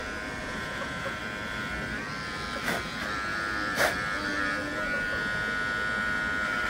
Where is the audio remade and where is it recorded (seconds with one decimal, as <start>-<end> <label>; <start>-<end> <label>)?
0.0-0.4 recorded; 0.4-1.2 remade; 1.2-6.7 recorded